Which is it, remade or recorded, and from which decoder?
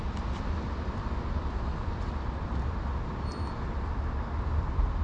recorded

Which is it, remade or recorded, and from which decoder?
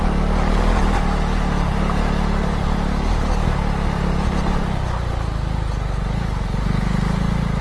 recorded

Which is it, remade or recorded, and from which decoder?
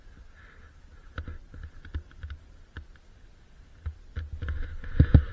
recorded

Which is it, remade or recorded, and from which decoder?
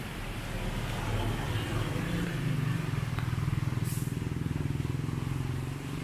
recorded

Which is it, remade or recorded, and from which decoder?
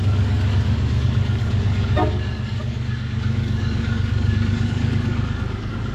remade, codec, DAC